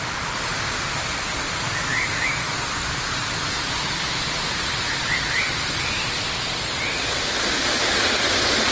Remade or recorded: recorded